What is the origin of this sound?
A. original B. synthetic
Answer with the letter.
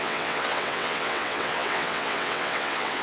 B